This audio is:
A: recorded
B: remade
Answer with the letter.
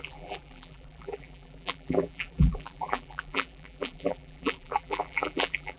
B